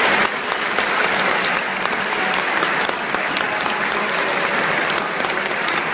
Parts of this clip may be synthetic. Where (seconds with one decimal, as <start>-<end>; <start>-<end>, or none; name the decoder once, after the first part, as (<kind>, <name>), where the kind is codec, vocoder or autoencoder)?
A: none